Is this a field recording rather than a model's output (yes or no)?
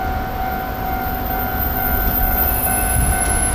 yes